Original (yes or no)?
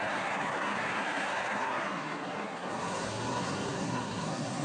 no